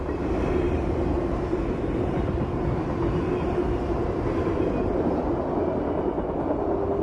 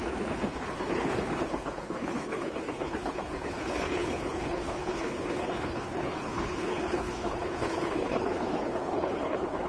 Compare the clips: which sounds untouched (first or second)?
first